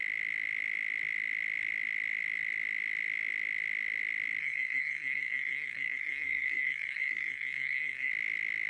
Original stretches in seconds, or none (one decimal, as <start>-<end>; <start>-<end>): 0.0-4.4; 8.1-8.7